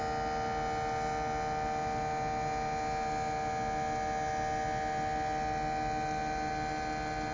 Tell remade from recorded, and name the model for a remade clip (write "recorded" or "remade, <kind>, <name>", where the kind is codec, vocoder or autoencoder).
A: recorded